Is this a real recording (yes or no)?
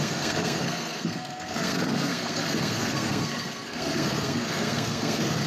no